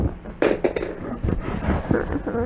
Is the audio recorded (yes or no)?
yes